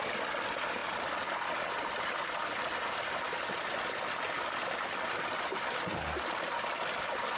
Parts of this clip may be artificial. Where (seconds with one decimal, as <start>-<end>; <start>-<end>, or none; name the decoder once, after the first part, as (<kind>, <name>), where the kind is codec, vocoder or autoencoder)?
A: none